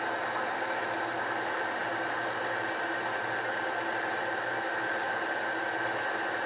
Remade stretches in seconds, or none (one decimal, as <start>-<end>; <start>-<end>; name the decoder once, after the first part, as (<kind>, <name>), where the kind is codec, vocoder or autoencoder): none